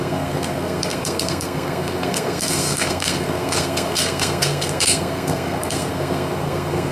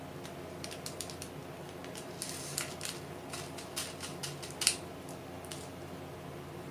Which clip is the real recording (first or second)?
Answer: second